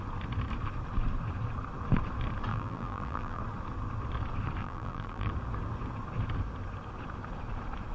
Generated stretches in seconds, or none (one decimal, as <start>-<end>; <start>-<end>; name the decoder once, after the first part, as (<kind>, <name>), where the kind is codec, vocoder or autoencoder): 2.5-3.4 (vocoder, BigVGAN v2); 4.6-5.3